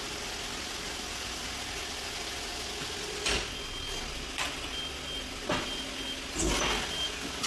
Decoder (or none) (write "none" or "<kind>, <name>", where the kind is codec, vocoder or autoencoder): none